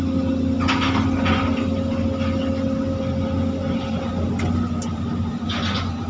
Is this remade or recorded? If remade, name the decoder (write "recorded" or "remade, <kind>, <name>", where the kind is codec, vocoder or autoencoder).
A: recorded